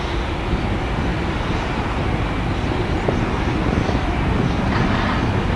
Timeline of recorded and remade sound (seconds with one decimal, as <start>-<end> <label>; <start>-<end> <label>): 0.0-5.6 recorded